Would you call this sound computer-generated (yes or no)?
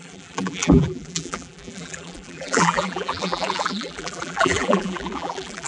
yes